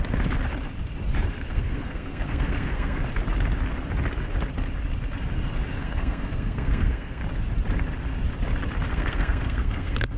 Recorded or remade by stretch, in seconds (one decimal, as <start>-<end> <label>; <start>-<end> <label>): 0.0-1.5 recorded; 1.5-3.0 remade; 3.0-5.8 recorded; 5.8-7.2 remade; 7.2-8.9 recorded; 8.9-10.2 remade